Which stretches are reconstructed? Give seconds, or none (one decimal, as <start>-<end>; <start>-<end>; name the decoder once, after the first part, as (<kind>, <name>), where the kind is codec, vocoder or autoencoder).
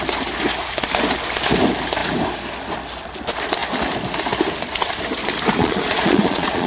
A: 5.6-6.7 (vocoder, Vocos)